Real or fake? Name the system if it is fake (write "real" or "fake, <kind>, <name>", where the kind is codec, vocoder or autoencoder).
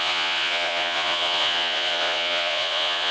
fake, vocoder, Vocos